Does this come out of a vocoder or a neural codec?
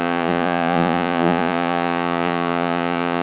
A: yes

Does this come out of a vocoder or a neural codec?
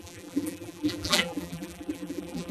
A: yes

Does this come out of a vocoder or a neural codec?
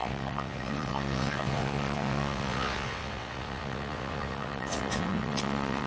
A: yes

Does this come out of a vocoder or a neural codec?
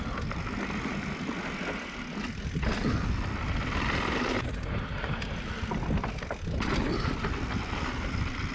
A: no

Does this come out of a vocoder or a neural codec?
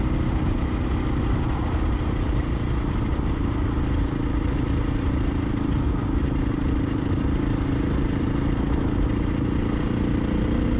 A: no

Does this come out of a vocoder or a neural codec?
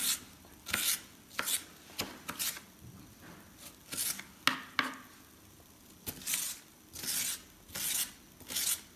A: no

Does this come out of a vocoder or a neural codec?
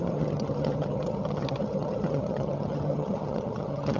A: yes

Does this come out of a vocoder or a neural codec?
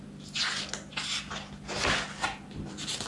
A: no